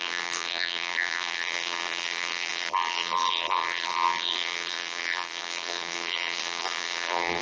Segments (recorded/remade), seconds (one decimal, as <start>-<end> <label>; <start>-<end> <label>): 0.0-7.4 remade